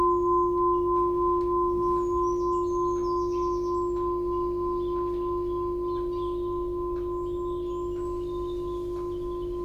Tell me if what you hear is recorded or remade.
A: recorded